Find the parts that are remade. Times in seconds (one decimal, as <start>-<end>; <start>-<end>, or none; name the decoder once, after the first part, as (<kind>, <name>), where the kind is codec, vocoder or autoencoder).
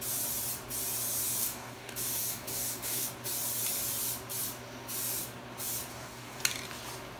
1.4-3.1 (codec, DAC); 5.9-6.4